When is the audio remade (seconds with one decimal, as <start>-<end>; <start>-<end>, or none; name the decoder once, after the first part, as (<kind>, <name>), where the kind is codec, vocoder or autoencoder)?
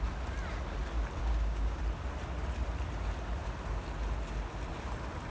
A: 1.2-1.8 (codec, DAC)